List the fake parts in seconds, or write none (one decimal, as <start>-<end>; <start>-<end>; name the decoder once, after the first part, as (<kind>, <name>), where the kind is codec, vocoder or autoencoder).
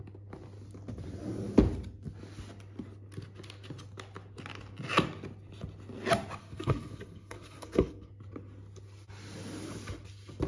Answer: 6.4-8.1 (codec, SNAC)